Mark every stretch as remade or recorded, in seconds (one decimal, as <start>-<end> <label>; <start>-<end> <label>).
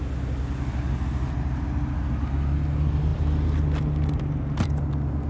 0.0-5.3 recorded